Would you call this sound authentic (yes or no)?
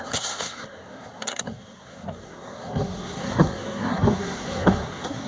no